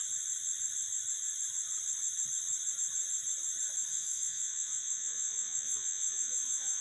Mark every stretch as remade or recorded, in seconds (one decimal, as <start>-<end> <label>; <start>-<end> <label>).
0.0-3.9 recorded; 3.9-6.8 remade